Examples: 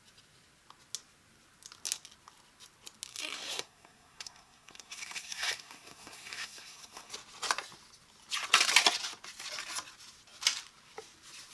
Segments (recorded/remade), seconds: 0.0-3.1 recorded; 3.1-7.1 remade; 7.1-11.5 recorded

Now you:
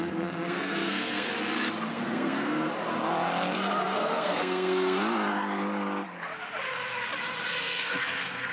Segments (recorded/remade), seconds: 0.0-1.3 remade; 1.3-1.9 recorded; 1.9-2.7 remade; 2.7-3.5 recorded; 3.5-5.0 remade; 5.0-7.5 recorded; 7.5-8.5 remade

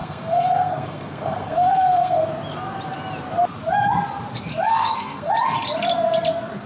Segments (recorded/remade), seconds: 0.0-2.3 remade; 2.3-4.7 recorded; 4.7-5.3 remade; 5.3-6.7 recorded

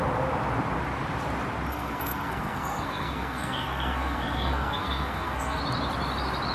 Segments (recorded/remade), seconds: 0.0-1.7 recorded; 1.7-5.6 remade; 5.6-6.5 recorded

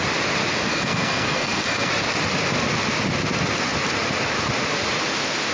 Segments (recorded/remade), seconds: 0.0-0.7 recorded; 0.7-1.9 remade; 1.9-5.5 recorded

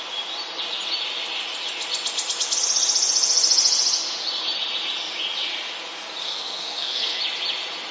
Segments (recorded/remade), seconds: 0.0-6.2 recorded; 6.2-7.2 remade; 7.2-7.9 recorded

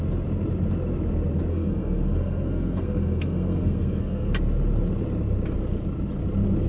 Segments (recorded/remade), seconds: 0.0-1.5 recorded; 1.5-4.3 remade; 4.3-6.7 recorded

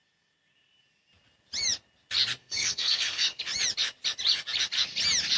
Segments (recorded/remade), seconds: 0.0-2.4 recorded; 2.4-3.4 remade; 3.4-5.4 recorded